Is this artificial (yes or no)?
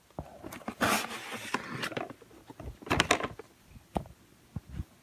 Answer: no